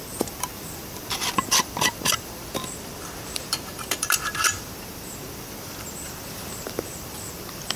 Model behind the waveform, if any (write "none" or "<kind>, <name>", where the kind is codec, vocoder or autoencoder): vocoder, BigVGAN v2